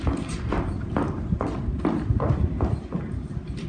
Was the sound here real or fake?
real